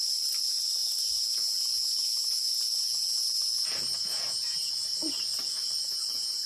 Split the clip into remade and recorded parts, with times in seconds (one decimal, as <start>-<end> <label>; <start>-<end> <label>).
0.0-0.8 recorded; 0.8-4.7 remade; 4.7-5.9 recorded; 5.9-6.5 remade